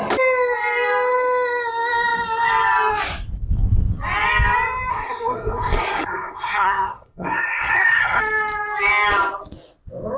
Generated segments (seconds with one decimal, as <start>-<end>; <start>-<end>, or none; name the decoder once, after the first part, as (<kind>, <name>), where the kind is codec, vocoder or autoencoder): 4.9-8.2 (codec, SNAC)

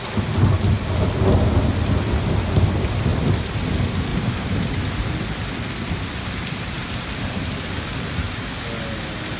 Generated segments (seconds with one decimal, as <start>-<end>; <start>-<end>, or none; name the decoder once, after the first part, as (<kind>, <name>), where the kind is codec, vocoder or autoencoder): 3.1-3.6 (vocoder, BigVGAN v2); 4.1-7.6